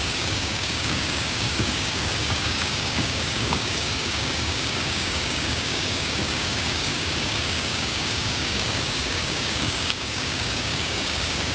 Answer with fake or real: fake